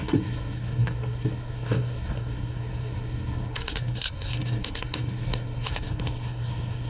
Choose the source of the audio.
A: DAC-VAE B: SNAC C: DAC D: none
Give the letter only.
B